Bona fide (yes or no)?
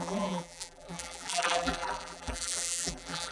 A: no